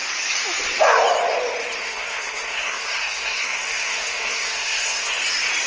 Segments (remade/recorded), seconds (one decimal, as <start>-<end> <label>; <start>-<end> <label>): 0.0-1.8 recorded; 1.8-5.2 remade; 5.2-5.7 recorded